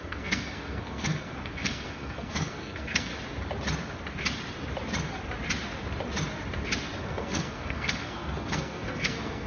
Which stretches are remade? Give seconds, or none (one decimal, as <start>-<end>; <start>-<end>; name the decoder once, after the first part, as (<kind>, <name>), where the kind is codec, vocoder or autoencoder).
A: 0.0-3.1 (codec, SNAC); 7.0-9.5